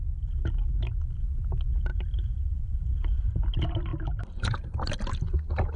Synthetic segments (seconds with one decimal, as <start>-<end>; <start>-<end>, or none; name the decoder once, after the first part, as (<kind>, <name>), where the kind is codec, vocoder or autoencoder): 1.9-2.6 (vocoder, BigVGAN v2)